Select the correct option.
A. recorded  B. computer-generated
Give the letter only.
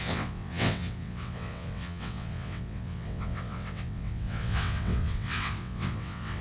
B